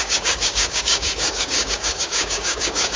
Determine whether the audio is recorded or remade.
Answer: remade